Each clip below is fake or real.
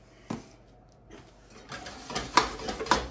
real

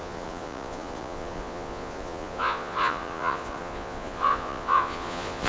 fake